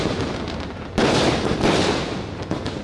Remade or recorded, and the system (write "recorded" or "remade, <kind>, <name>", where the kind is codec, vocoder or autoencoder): recorded